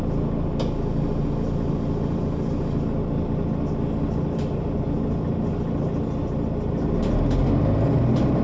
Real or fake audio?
real